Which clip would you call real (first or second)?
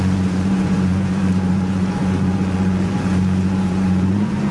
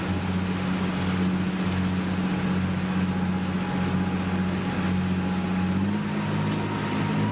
second